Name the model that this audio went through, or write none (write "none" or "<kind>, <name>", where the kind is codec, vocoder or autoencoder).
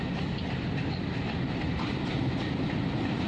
none